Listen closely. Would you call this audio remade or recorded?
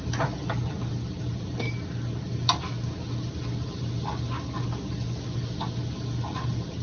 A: recorded